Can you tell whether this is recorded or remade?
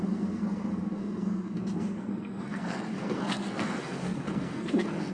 remade